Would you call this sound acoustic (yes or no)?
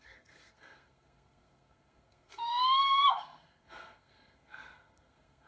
no